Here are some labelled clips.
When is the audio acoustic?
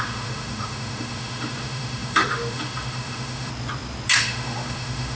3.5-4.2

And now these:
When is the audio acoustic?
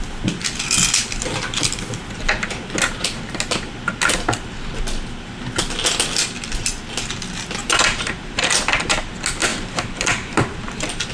0.0-7.6; 8.5-9.5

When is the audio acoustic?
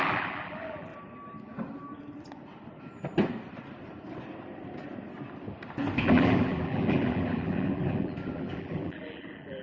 0.9-6.0